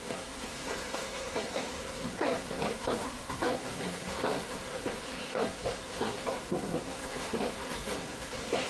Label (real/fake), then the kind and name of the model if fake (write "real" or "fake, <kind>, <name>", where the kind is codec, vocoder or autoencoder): fake, codec, SNAC